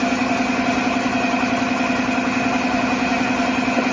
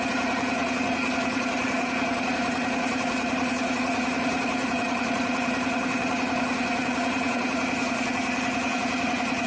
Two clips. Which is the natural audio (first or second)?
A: first